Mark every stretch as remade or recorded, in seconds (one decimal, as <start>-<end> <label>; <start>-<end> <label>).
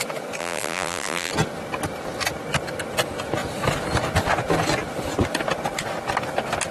0.0-0.4 recorded; 0.4-1.3 remade; 1.3-6.7 recorded